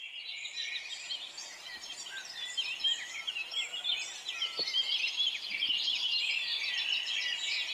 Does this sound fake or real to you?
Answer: real